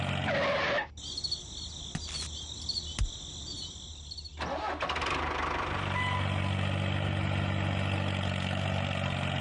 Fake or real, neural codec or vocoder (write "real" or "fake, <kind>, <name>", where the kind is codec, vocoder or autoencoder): real